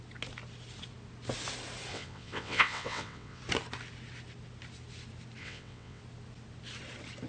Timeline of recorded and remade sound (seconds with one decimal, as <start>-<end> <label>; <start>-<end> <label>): 0.0-1.9 recorded; 1.9-3.4 remade; 3.4-5.4 recorded; 5.4-6.0 remade; 6.0-7.3 recorded